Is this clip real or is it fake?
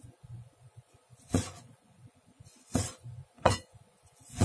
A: fake